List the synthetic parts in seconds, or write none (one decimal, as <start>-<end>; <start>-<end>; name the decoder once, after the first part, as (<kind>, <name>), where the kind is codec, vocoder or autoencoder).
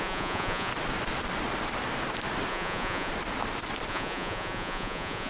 0.0-0.7 (vocoder, Vocos); 2.5-3.1; 3.9-5.3